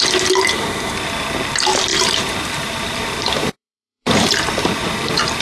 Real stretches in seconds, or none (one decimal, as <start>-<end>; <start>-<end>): 0.0-1.9